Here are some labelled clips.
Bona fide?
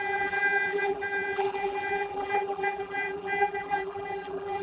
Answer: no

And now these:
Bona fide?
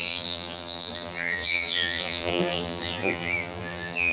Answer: no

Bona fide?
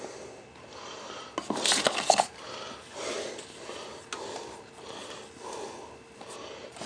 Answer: yes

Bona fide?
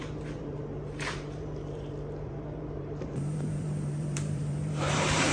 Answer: no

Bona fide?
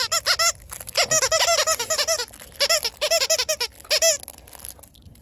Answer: yes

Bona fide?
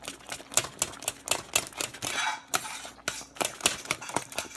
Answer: yes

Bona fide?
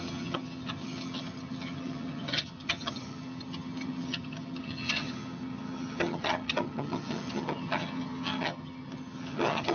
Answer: no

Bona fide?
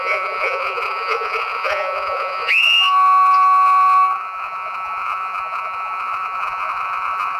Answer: no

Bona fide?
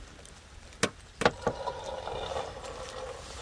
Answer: yes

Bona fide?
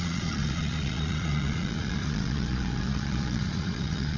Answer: no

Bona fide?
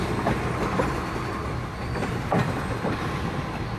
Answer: yes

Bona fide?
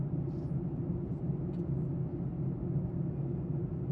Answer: yes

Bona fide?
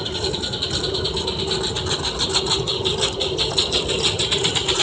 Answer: yes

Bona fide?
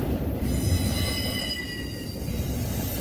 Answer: yes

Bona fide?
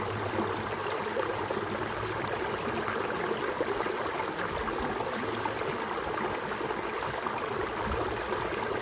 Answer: yes